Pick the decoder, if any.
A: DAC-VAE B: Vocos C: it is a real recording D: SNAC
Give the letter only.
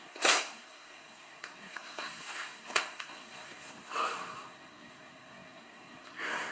D